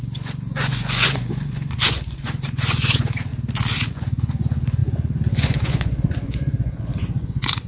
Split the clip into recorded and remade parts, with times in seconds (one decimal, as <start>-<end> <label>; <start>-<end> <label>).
0.0-3.3 remade; 3.3-3.9 recorded; 3.9-7.7 remade